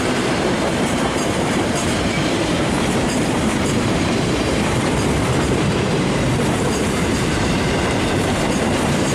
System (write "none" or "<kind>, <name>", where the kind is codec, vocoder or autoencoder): vocoder, BigVGAN v2